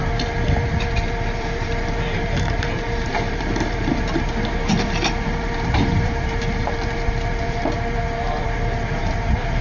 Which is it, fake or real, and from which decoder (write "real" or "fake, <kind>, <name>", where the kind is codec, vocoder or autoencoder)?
fake, vocoder, BigVGAN v2